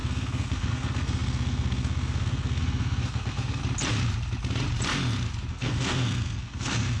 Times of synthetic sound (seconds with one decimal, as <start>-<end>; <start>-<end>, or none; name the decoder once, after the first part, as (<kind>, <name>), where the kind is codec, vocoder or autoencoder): 0.0-3.6 (codec, SNAC); 5.5-7.0